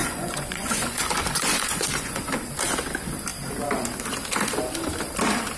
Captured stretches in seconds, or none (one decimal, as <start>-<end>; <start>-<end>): 2.2-5.6